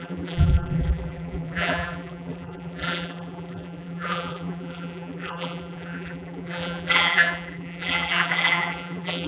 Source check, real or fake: fake